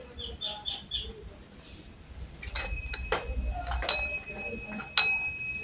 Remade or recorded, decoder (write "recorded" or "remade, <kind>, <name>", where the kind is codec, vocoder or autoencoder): recorded